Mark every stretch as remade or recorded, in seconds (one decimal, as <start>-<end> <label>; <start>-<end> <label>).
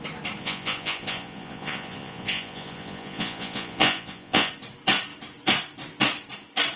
0.0-0.4 recorded; 0.4-4.5 remade; 4.5-6.8 recorded